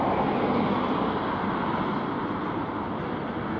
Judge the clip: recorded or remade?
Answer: recorded